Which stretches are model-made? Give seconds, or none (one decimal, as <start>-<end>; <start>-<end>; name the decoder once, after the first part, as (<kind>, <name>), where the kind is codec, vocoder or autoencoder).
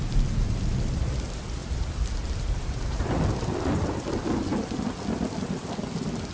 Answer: 1.6-3.2 (vocoder, BigVGAN v2)